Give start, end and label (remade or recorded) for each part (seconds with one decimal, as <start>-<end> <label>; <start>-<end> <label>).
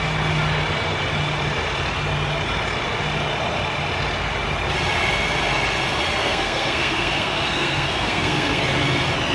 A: 0.0-6.2 recorded; 6.2-8.6 remade; 8.6-9.3 recorded